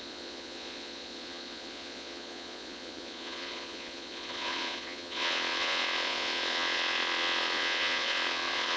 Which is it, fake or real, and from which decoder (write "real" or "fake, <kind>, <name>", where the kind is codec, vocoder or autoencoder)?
fake, vocoder, Vocos